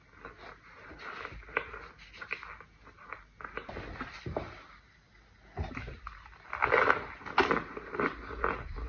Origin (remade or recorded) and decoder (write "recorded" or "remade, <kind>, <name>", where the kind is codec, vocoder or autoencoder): recorded